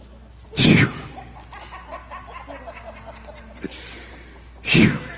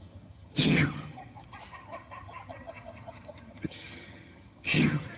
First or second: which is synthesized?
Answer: second